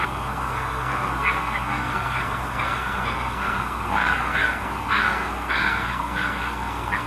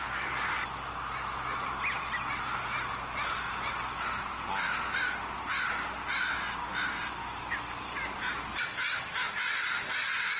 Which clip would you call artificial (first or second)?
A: first